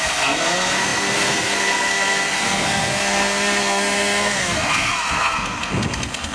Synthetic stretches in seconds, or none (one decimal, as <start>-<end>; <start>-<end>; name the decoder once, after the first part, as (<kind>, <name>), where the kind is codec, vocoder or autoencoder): 0.0-6.3 (codec, SNAC)